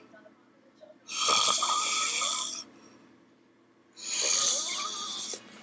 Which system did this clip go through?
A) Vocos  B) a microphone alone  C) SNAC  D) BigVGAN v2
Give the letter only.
B